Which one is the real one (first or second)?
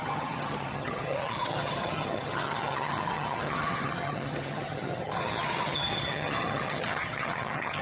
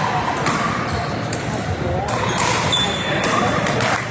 second